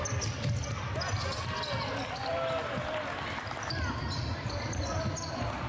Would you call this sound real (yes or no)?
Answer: yes